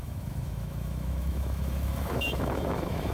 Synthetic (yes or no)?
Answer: yes